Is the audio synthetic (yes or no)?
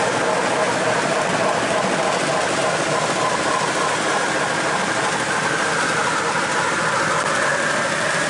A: no